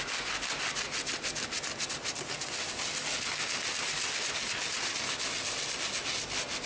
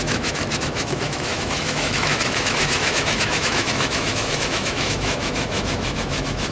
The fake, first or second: second